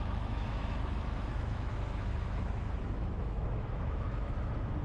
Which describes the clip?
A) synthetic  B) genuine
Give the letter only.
A